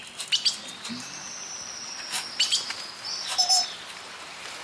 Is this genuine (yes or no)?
yes